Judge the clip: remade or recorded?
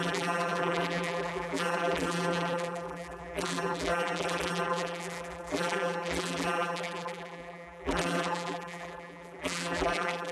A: remade